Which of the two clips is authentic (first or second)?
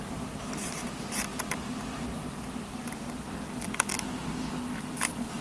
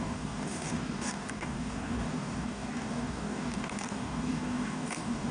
first